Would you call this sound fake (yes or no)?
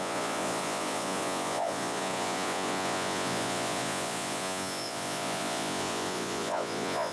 yes